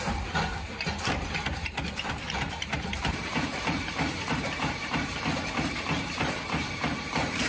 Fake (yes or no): yes